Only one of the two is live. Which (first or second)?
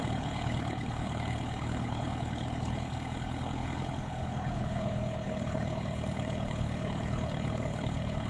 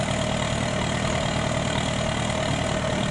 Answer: second